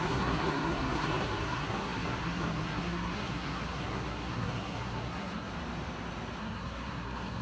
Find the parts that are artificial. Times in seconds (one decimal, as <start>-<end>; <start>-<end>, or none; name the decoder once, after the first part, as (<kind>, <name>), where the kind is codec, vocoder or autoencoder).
0.0-5.5 (codec, SNAC); 6.4-7.4